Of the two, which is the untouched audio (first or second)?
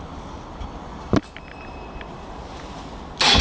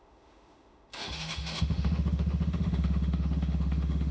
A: first